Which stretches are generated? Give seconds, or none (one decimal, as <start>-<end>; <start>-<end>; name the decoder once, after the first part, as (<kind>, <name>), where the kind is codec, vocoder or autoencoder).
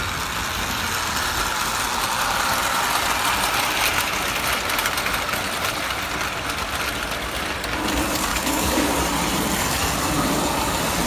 8.3-9.0 (codec, DAC)